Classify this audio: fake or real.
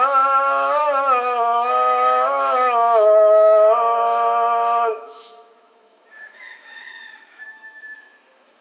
fake